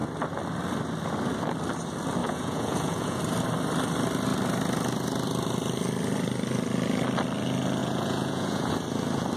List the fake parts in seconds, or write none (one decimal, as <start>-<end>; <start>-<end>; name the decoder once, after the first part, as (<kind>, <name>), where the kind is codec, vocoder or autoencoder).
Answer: 2.2-3.2 (vocoder, Vocos); 7.8-8.7